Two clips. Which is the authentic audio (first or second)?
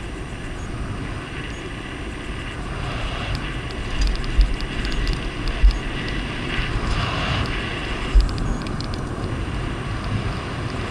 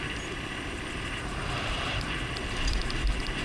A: first